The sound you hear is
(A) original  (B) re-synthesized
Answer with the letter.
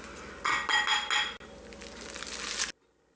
A